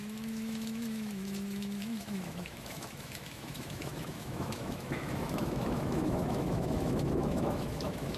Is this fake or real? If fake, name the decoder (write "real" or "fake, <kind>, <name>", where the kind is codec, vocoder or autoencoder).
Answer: fake, autoencoder, DAC-VAE